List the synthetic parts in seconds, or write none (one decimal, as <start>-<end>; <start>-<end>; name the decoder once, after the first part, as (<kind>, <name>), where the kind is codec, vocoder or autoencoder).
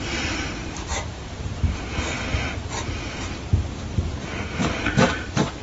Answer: 0.6-2.7 (vocoder, BigVGAN v2)